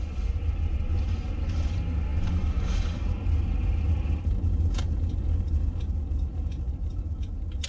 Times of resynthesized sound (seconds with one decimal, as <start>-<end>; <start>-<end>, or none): none